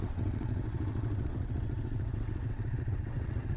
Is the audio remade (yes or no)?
yes